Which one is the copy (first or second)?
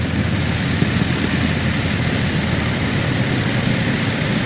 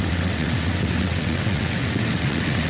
second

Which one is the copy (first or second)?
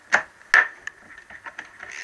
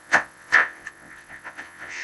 second